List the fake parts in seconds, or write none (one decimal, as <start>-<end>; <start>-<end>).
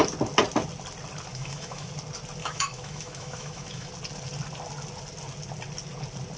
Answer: 1.3-1.9; 2.4-3.9